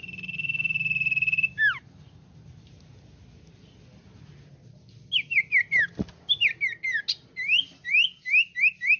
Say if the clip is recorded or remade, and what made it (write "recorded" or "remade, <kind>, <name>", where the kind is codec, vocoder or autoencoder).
recorded